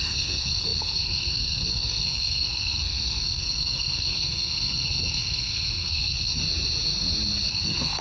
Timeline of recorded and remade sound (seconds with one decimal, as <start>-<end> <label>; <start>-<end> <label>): 0.0-6.4 remade; 6.4-7.5 recorded; 7.5-8.0 remade